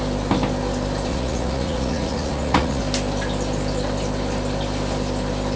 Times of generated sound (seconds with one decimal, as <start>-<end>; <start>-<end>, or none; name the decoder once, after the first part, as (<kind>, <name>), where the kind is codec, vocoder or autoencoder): 1.1-2.8 (vocoder, Vocos)